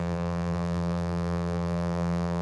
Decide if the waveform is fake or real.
fake